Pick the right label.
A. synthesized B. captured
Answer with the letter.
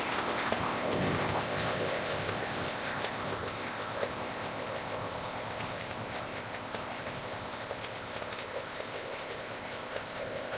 A